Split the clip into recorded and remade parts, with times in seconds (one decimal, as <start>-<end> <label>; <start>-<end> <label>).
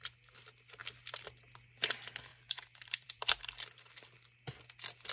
0.0-2.3 recorded; 2.3-3.3 remade; 3.3-5.1 recorded